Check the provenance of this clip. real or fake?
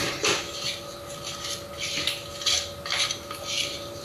real